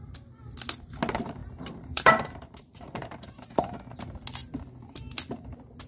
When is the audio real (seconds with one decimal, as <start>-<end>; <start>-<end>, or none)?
0.0-1.4; 3.8-5.9